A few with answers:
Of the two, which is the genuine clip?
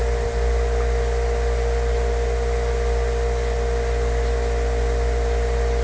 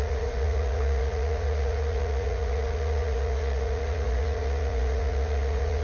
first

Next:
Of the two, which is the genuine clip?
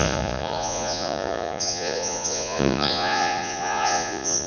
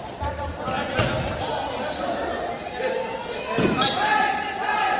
second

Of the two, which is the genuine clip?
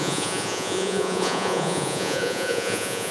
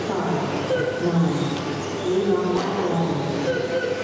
second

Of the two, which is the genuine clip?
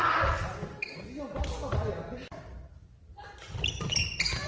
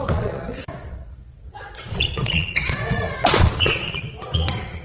first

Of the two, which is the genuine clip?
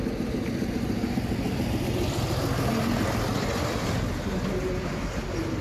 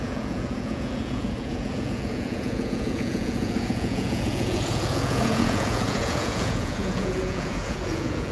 first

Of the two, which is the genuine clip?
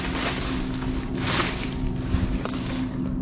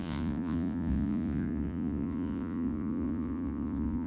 first